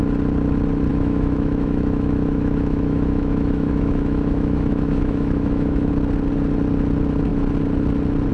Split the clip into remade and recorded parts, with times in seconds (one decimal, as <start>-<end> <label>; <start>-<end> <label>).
0.0-0.9 recorded; 0.9-5.9 remade; 5.9-8.3 recorded

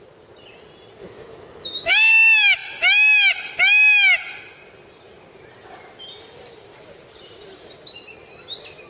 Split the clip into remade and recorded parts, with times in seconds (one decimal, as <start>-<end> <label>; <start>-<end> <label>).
0.0-1.0 recorded; 1.0-1.9 remade; 1.9-8.9 recorded

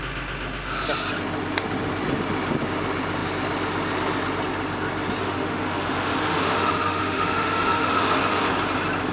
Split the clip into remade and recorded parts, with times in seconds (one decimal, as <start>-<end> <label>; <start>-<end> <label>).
0.0-5.2 recorded; 5.2-8.5 remade; 8.5-9.1 recorded

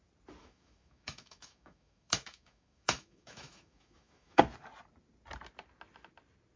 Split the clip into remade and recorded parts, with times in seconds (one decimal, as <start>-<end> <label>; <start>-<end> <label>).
0.0-0.4 recorded; 0.4-4.4 remade; 4.4-6.6 recorded